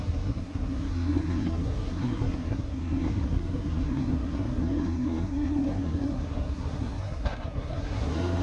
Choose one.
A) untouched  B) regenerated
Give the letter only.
B